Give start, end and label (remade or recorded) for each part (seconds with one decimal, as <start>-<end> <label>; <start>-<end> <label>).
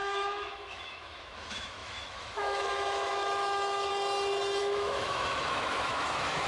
0.0-3.9 remade; 3.9-4.6 recorded; 4.6-6.5 remade